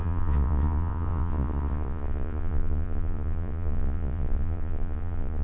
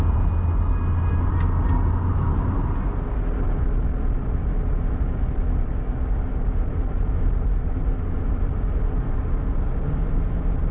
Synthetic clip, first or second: first